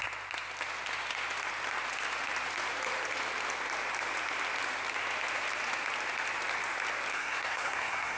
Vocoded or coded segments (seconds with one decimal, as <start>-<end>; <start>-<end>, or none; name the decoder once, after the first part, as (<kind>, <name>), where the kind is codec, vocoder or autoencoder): 7.1-8.2 (codec, SNAC)